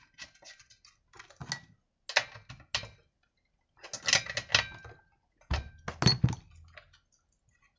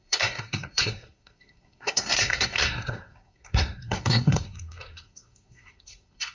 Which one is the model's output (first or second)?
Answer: second